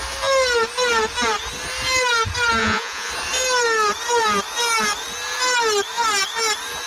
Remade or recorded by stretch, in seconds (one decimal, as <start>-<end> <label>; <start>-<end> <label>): 0.0-2.6 recorded; 2.6-3.1 remade; 3.1-6.9 recorded

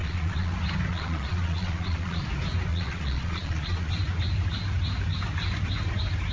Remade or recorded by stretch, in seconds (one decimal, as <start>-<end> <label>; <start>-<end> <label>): 0.0-0.5 remade; 0.5-0.9 recorded; 0.9-2.2 remade; 2.2-2.7 recorded; 2.7-3.9 remade; 3.9-6.3 recorded

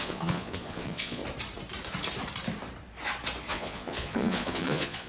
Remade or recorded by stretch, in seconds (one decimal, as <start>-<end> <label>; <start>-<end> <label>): 0.0-1.2 remade; 1.2-3.5 recorded; 3.5-5.1 remade

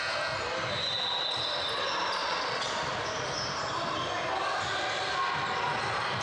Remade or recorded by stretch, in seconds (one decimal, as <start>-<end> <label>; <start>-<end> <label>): 0.0-2.2 recorded; 2.2-2.7 remade; 2.7-6.2 recorded

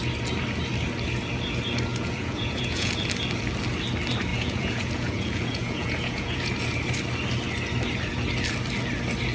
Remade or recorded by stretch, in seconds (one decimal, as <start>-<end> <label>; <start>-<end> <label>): 0.0-1.9 recorded; 1.9-2.9 remade; 2.9-4.3 recorded; 4.3-6.5 remade; 6.5-9.3 recorded

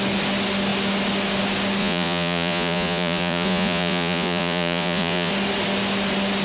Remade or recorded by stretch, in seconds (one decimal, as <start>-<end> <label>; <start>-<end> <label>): 0.0-1.8 recorded; 1.8-5.3 remade; 5.3-6.4 recorded

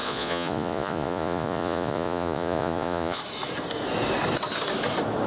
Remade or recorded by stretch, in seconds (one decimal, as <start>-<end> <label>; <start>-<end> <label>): 0.0-3.2 remade; 3.2-5.3 recorded